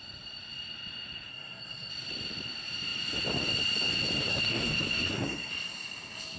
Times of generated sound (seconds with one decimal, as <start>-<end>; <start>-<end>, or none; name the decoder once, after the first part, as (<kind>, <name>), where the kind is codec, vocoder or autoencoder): 1.3-1.9 (codec, SNAC); 4.3-5.5